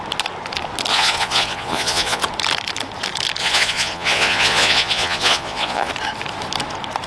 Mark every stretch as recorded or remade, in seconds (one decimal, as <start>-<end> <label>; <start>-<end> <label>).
0.0-0.9 recorded; 0.9-2.2 remade; 2.2-3.4 recorded; 3.4-5.9 remade; 5.9-7.1 recorded